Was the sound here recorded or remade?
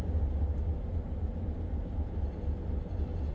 recorded